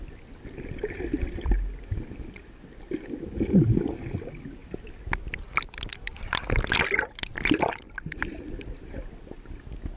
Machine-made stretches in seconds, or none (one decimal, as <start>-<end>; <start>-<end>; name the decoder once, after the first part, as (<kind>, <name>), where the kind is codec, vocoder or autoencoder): none